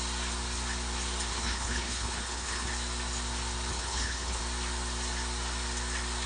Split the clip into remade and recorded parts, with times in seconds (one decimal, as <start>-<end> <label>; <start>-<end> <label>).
0.0-1.3 recorded; 1.3-2.7 remade; 2.7-3.7 recorded; 3.7-4.4 remade; 4.4-6.3 recorded